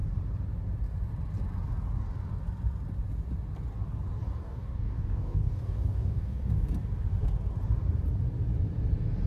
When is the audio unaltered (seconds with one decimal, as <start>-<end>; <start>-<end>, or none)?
0.0-4.4; 6.7-9.3